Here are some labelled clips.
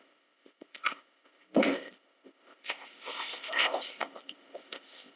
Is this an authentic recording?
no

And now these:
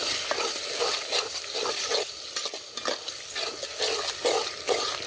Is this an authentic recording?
yes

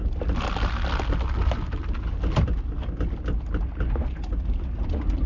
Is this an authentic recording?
yes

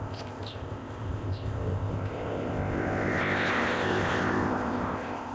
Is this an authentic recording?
no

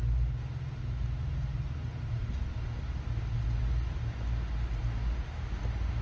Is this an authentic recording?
yes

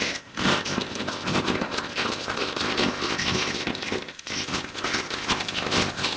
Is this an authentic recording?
no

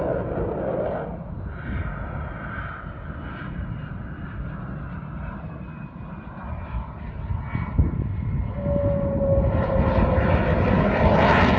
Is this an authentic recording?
yes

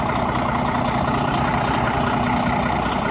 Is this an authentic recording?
yes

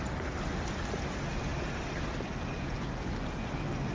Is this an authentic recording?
yes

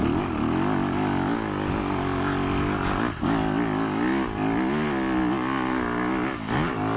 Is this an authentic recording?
yes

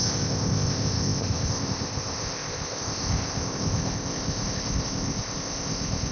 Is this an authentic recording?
no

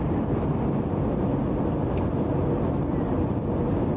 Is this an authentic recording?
yes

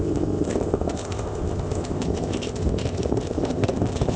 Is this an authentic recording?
no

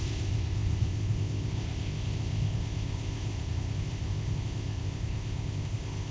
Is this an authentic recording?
no